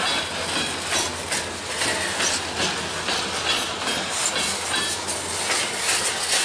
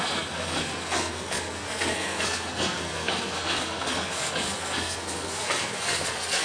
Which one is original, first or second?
first